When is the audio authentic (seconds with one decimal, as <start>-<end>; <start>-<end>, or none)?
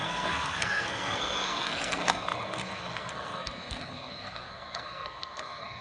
none